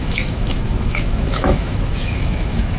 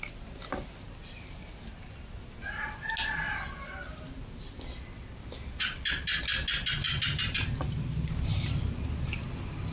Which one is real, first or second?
second